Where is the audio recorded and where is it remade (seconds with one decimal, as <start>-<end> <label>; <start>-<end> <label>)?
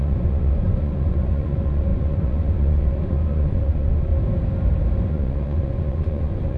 0.0-4.1 remade; 4.1-5.1 recorded; 5.1-6.6 remade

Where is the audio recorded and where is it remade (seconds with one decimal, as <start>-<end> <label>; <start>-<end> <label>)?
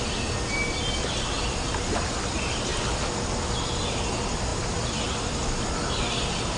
0.0-6.6 recorded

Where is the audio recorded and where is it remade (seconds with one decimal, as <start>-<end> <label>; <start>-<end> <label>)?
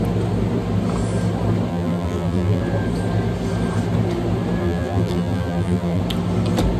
0.0-1.7 recorded; 1.7-2.6 remade; 2.6-4.6 recorded; 4.6-6.0 remade; 6.0-6.8 recorded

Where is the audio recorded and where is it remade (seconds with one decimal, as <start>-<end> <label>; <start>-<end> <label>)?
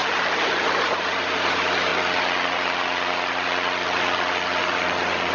0.0-0.7 recorded; 0.7-1.9 remade; 1.9-5.3 recorded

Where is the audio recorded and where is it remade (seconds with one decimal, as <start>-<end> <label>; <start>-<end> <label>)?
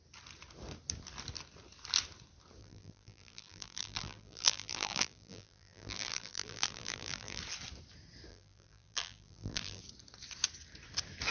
0.0-2.6 recorded; 2.6-7.4 remade; 7.4-8.3 recorded; 8.3-9.8 remade; 9.8-11.3 recorded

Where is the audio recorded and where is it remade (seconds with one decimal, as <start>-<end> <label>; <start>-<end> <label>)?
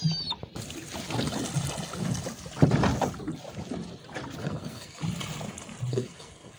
0.0-4.4 recorded; 4.4-5.0 remade; 5.0-5.9 recorded; 5.9-6.6 remade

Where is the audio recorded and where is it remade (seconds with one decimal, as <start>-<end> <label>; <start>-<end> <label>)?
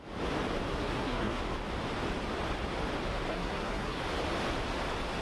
0.0-0.7 recorded; 0.7-1.4 remade; 1.4-3.3 recorded; 3.3-4.0 remade; 4.0-5.2 recorded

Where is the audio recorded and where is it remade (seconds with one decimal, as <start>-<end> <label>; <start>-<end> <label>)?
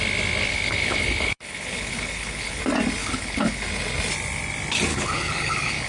0.0-0.5 recorded; 0.5-2.6 remade; 2.6-3.0 recorded; 3.0-3.6 remade; 3.6-4.9 recorded; 4.9-5.9 remade